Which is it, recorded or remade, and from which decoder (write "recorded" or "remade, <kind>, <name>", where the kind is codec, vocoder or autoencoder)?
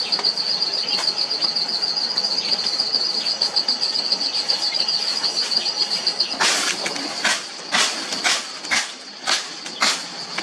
recorded